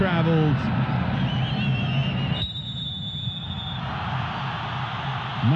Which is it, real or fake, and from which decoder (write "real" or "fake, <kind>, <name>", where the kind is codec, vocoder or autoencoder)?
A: real